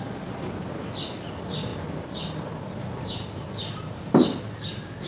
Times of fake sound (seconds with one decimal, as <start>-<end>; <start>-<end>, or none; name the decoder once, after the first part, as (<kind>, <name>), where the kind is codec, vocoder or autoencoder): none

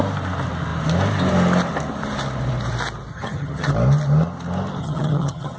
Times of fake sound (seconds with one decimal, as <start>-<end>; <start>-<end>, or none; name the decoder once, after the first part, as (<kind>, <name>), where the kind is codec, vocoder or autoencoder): 3.1-3.7 (vocoder, HiFi-GAN); 4.8-5.6

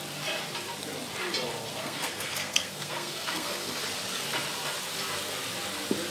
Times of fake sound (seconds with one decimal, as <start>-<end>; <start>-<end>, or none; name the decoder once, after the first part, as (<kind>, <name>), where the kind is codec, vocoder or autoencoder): 1.7-3.8 (codec, SNAC)